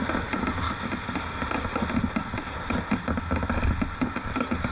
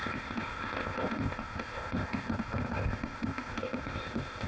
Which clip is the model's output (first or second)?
second